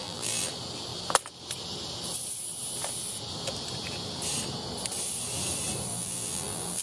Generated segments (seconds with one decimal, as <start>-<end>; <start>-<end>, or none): 0.0-0.5; 5.9-6.8